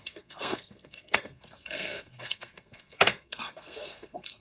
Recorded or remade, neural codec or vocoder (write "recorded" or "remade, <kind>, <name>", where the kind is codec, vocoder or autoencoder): remade, codec, SNAC